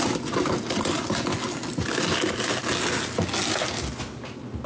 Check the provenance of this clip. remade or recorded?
recorded